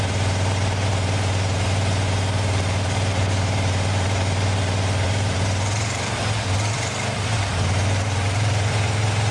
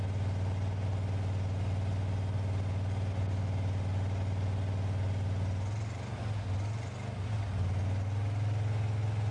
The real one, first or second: second